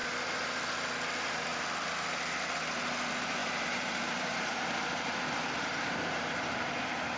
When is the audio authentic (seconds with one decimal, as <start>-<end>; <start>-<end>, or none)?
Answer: 0.0-3.4